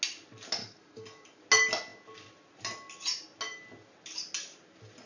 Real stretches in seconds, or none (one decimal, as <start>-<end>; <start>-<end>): 0.0-0.6; 1.4-5.1